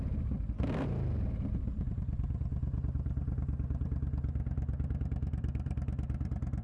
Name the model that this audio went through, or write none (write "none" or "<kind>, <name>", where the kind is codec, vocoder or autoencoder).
vocoder, BigVGAN v2